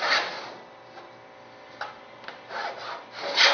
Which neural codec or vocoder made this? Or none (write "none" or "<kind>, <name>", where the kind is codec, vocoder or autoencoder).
none